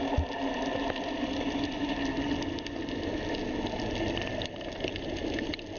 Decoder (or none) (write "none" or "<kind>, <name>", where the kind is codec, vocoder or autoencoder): none